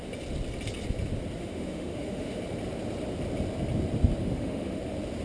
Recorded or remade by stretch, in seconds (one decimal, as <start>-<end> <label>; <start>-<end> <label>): 0.0-1.4 recorded; 1.4-2.4 remade; 2.4-4.2 recorded; 4.2-4.8 remade; 4.8-5.2 recorded